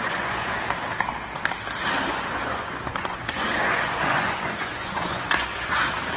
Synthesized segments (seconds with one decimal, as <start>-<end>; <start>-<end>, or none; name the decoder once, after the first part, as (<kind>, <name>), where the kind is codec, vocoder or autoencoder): 0.0-0.6 (vocoder, Vocos); 2.1-5.8